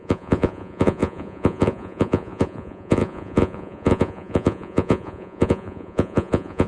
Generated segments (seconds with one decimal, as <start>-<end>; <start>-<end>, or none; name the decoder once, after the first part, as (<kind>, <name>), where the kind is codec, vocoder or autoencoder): 0.0-6.7 (vocoder, Vocos)